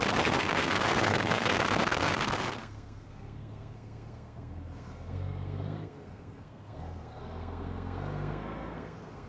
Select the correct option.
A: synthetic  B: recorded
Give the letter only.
A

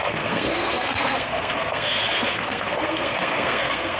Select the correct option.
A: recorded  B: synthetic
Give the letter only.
B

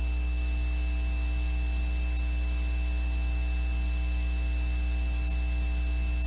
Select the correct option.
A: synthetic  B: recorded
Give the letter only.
B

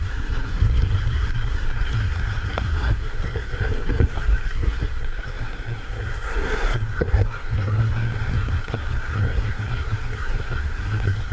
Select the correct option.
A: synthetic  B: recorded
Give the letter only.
A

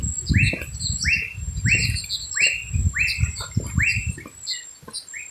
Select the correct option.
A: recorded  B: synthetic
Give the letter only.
A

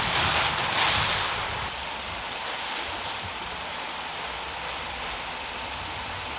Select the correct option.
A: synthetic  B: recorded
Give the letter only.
B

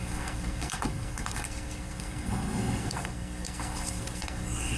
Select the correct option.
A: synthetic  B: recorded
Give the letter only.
A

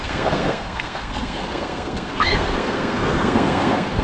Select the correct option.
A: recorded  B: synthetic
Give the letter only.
B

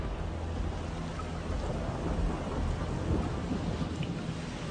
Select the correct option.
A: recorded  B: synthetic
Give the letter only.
A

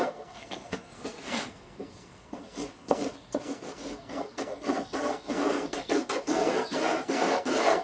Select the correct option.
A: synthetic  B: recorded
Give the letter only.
A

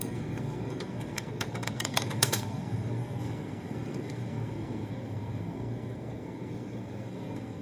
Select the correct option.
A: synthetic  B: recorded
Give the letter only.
A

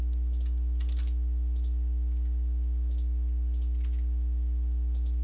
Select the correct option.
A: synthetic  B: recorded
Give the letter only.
B